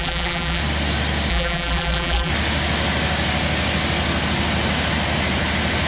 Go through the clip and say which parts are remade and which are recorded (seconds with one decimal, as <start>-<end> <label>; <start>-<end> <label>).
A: 0.0-0.6 remade; 0.6-1.3 recorded; 1.3-2.3 remade; 2.3-5.9 recorded